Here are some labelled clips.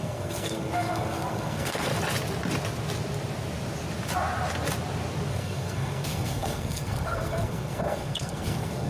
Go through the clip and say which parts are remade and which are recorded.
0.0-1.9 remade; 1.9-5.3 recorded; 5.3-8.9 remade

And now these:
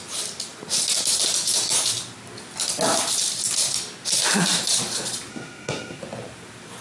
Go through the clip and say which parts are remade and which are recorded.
0.0-5.3 recorded; 5.3-6.0 remade; 6.0-6.8 recorded

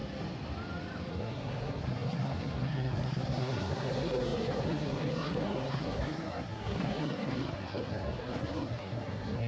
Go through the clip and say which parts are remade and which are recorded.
0.0-1.1 recorded; 1.1-9.5 remade

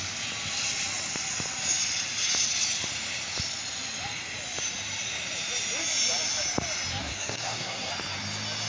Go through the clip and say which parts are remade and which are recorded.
0.0-7.0 recorded; 7.0-7.9 remade; 7.9-8.7 recorded

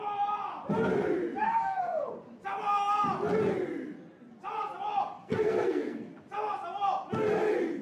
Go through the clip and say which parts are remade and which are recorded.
0.0-1.4 recorded; 1.4-2.1 remade; 2.1-5.2 recorded; 5.2-6.1 remade; 6.1-7.8 recorded